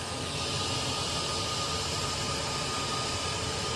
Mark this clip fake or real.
real